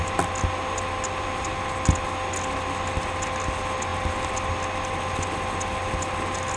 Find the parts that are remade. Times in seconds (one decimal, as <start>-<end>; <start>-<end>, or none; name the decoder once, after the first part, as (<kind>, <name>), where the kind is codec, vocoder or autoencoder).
none